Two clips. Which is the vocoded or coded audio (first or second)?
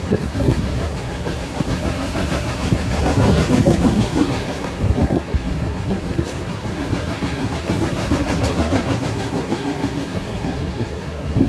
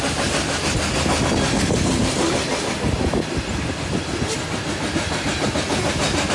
first